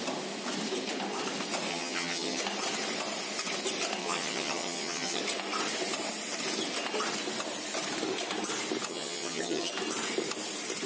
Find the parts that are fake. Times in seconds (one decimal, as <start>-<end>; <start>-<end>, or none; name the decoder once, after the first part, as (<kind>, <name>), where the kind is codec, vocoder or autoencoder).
1.7-2.4 (vocoder, HiFi-GAN); 4.0-5.2; 8.9-9.7